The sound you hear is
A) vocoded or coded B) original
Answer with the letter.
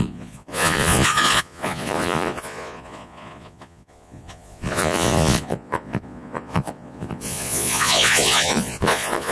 A